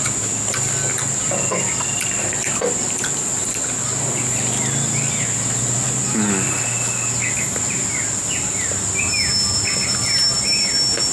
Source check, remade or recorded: recorded